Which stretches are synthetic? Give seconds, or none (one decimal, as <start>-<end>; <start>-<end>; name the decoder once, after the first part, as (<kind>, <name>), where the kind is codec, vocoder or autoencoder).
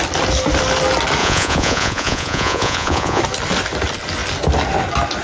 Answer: 1.2-3.2 (vocoder, Vocos)